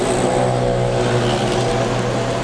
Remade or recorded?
recorded